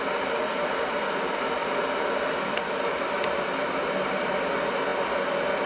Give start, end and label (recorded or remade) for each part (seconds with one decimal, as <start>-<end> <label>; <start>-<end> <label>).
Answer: 0.0-5.7 recorded